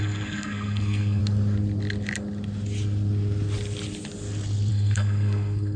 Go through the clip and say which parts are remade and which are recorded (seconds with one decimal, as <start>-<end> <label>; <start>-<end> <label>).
0.0-1.2 remade; 1.2-4.7 recorded; 4.7-5.8 remade